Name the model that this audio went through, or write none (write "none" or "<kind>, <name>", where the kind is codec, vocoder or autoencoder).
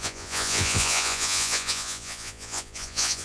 vocoder, Vocos